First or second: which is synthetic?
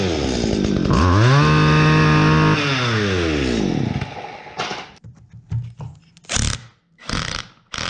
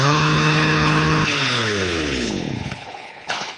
second